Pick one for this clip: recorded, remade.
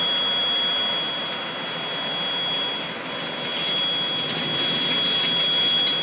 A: recorded